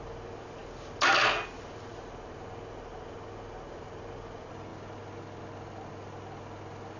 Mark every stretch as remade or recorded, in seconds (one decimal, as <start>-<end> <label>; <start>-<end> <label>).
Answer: 0.0-7.0 recorded